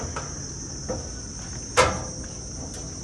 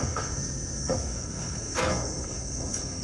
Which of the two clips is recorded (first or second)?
first